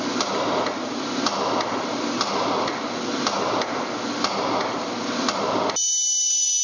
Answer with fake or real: real